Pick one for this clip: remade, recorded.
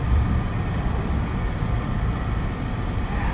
remade